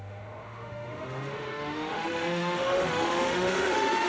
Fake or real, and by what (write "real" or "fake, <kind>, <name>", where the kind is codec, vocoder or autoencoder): fake, autoencoder, DAC-VAE